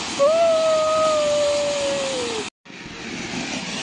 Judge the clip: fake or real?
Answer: real